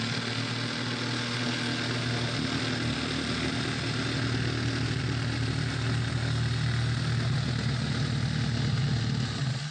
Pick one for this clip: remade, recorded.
recorded